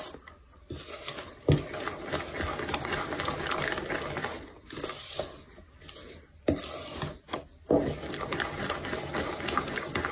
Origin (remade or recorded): recorded